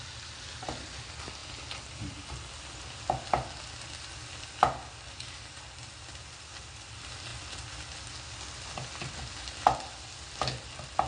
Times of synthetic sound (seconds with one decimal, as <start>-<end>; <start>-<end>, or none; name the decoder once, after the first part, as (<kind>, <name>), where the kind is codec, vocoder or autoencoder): none